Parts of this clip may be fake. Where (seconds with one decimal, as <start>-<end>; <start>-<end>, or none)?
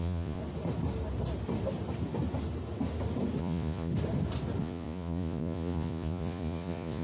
0.0-0.4; 3.4-3.9; 4.6-7.0